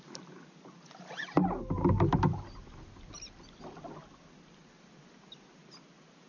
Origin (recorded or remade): recorded